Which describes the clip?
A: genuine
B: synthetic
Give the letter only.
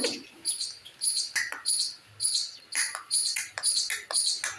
A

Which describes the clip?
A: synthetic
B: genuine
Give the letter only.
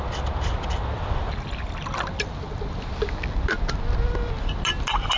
B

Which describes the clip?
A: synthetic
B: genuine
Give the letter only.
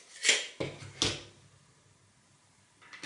B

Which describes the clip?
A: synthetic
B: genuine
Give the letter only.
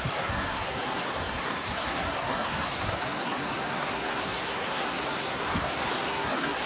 A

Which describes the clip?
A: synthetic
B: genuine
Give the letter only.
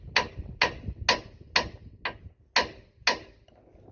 B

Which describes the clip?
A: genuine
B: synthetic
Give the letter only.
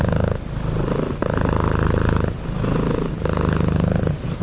A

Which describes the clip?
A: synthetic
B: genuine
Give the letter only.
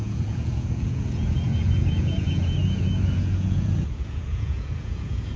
A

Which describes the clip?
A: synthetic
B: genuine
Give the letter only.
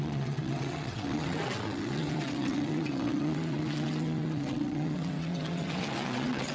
A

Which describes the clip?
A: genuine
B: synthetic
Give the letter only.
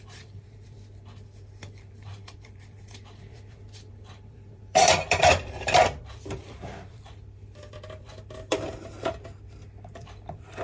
B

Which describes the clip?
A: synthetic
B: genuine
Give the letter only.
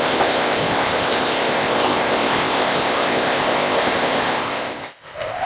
A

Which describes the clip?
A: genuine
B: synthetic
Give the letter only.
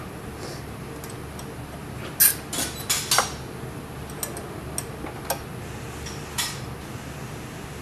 A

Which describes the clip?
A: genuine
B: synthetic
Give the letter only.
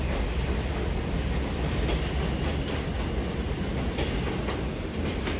A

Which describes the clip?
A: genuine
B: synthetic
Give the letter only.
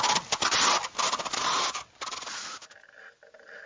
A